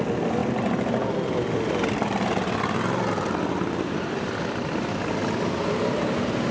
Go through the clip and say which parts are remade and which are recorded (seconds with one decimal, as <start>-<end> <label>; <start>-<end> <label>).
0.0-6.5 recorded